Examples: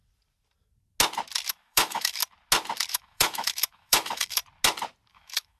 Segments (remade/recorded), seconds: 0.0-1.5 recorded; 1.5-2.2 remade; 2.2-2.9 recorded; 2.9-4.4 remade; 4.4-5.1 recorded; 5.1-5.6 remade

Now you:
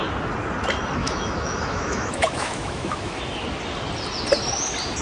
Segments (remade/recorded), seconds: 0.0-1.0 recorded; 1.0-3.2 remade; 3.2-5.0 recorded

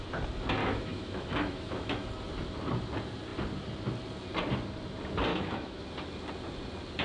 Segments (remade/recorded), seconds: 0.0-0.6 recorded; 0.6-2.1 remade; 2.1-5.3 recorded; 5.3-5.8 remade; 5.8-7.0 recorded

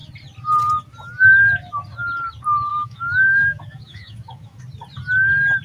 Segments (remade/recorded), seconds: 0.0-2.7 recorded; 2.7-4.6 remade; 4.6-5.6 recorded

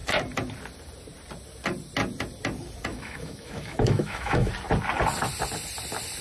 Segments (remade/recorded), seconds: 0.0-2.9 recorded; 2.9-4.5 remade; 4.5-6.2 recorded

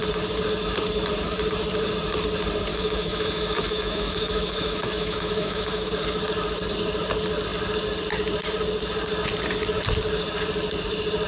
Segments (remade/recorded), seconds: 0.0-2.7 recorded; 2.7-5.9 remade; 5.9-11.3 recorded

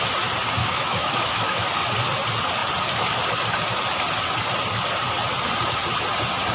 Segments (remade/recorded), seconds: 0.0-0.6 recorded; 0.6-1.7 remade; 1.7-6.5 recorded